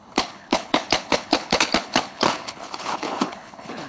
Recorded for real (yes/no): no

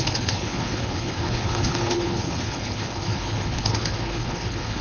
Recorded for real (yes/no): no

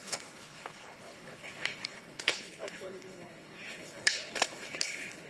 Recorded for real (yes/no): no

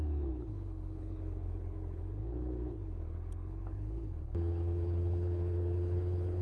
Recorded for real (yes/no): no